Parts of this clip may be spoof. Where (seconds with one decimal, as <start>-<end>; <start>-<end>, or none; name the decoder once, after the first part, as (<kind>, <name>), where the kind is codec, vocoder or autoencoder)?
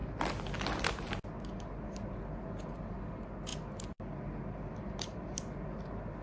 none